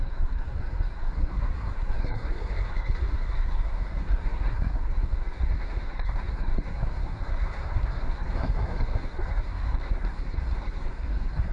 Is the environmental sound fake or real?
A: fake